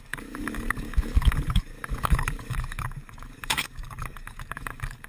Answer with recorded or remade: remade